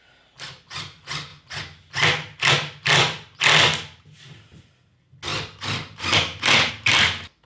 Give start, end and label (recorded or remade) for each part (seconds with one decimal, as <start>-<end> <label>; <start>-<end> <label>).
0.0-7.5 recorded